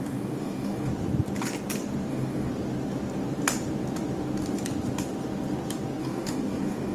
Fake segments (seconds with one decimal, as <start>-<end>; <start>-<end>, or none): 0.0-0.9; 2.1-2.5; 6.0-6.9